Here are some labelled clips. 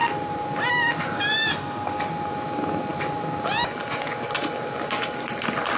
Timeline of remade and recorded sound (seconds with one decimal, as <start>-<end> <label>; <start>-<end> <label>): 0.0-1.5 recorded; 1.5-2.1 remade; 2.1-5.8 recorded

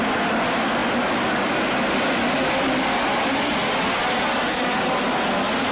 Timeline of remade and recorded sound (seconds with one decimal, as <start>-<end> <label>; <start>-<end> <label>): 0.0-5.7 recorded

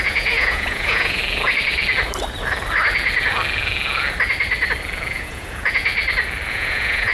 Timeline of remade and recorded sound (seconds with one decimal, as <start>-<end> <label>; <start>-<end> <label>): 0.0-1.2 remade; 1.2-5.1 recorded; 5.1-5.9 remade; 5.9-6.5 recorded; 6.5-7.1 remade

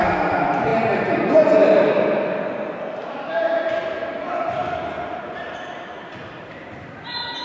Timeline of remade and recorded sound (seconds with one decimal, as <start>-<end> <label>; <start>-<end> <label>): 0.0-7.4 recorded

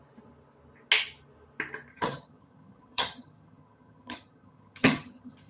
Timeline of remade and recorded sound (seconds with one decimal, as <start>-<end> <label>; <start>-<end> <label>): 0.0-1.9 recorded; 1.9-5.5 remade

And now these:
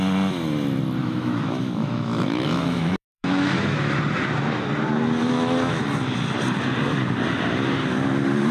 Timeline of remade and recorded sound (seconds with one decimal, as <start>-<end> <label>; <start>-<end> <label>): 0.0-1.0 recorded; 1.0-3.9 remade; 3.9-5.2 recorded; 5.2-5.8 remade; 5.8-8.5 recorded

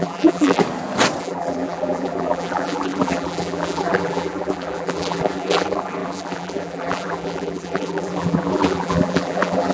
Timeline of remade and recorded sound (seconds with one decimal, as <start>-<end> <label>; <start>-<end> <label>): 0.0-0.6 remade; 0.6-1.2 recorded; 1.2-9.7 remade

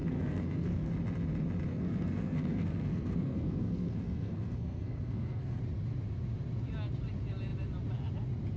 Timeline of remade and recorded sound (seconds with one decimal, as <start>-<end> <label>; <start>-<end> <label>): 0.0-0.9 remade; 0.9-1.7 recorded; 1.7-5.6 remade; 5.6-8.6 recorded